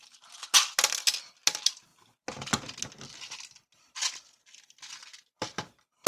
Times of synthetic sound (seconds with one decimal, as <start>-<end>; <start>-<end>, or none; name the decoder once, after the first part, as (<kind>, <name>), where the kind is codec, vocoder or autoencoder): none